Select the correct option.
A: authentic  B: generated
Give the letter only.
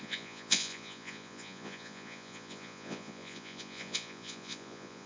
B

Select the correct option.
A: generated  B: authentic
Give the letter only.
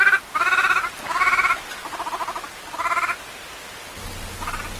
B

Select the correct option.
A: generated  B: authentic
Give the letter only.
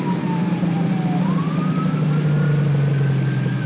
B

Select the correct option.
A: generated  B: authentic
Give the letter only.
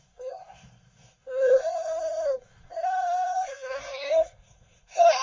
A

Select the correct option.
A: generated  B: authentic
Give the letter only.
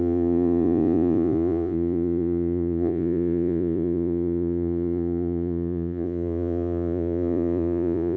A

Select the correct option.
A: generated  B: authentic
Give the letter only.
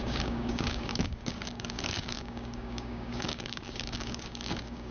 A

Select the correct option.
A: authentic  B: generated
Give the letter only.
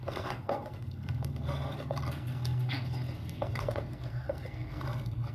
B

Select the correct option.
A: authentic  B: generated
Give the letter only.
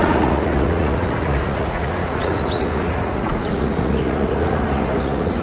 B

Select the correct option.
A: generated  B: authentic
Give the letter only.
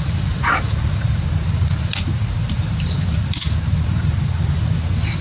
A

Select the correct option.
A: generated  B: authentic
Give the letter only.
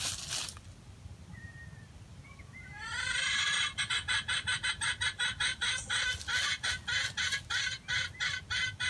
B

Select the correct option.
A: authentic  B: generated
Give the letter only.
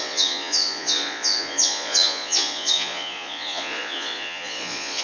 B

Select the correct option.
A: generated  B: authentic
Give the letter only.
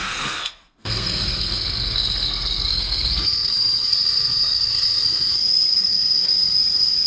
A